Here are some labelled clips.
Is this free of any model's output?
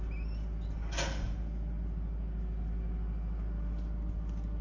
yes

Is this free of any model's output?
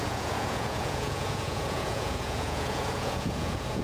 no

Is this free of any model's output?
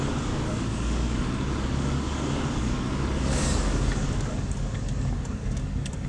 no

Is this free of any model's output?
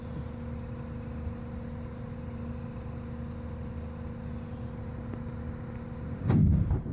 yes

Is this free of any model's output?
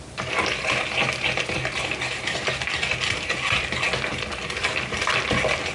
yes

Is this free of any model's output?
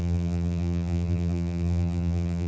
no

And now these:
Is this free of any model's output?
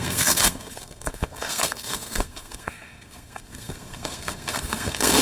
no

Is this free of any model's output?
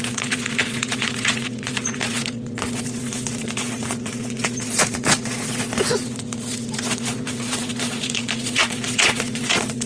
no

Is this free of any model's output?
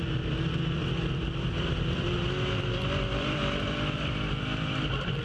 no